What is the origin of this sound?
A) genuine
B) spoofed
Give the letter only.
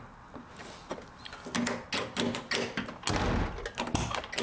A